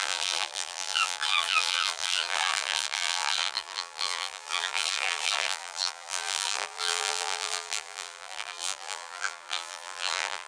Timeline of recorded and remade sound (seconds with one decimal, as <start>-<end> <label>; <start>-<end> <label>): 0.0-10.5 remade